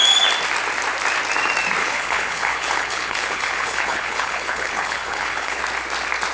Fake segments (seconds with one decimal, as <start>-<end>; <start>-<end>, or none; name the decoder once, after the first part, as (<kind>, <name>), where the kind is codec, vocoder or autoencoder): 1.8-5.6 (codec, HILCodec)